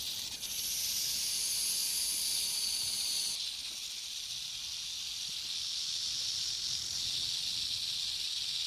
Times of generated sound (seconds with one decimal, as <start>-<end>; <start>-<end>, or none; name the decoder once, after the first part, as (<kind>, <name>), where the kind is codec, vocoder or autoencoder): none